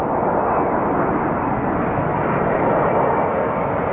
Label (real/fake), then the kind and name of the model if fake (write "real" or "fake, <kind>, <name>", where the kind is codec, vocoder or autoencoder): real